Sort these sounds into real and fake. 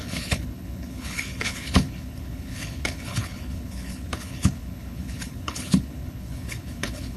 fake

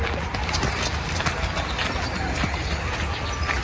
real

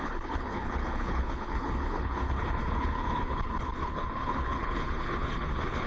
fake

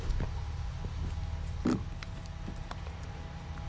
real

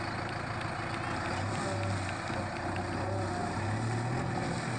real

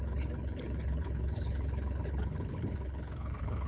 fake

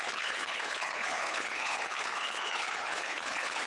fake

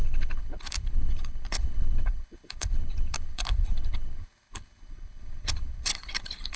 fake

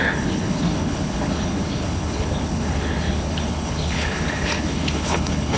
fake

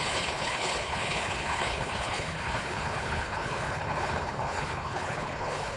fake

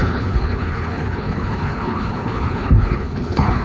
fake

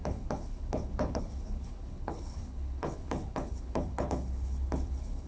fake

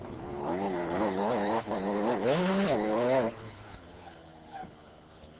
fake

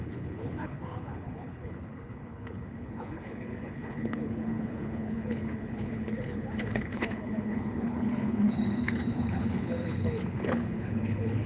fake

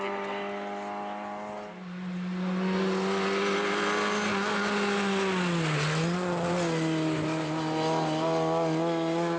real